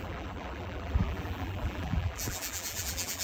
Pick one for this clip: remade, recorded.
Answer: remade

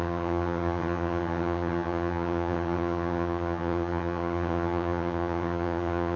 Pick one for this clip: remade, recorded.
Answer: remade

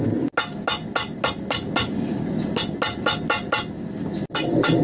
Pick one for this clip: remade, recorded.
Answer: recorded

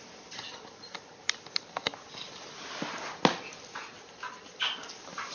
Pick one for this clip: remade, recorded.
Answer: recorded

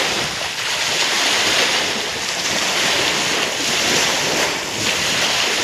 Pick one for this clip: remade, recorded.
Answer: recorded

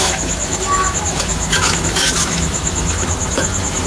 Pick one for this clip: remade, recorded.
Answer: remade